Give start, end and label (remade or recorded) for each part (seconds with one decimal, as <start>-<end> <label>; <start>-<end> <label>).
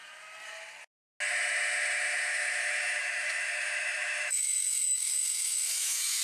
0.0-2.3 recorded; 2.3-6.2 remade